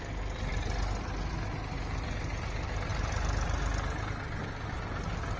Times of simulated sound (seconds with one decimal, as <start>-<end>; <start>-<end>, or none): none